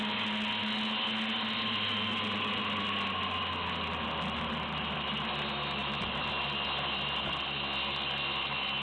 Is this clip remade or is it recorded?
recorded